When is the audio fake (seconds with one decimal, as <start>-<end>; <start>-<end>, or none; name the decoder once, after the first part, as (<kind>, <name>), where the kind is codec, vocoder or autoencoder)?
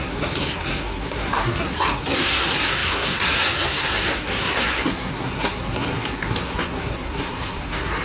0.0-8.0 (codec, SNAC)